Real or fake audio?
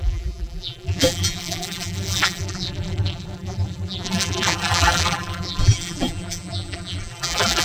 fake